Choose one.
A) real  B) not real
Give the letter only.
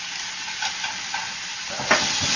A